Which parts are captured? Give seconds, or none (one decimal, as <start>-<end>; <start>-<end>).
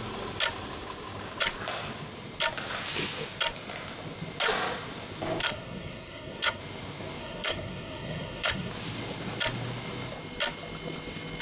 0.0-5.4; 6.6-7.2; 8.7-11.4